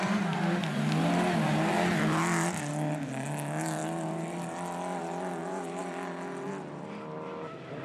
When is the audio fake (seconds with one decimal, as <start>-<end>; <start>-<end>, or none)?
1.7-2.7; 3.8-5.8